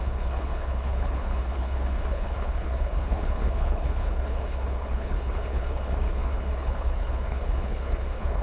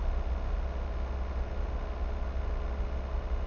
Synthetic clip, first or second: first